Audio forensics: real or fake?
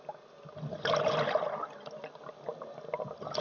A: real